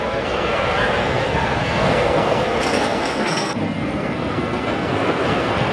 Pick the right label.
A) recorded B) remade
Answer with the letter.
B